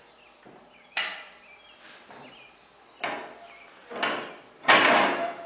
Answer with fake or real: real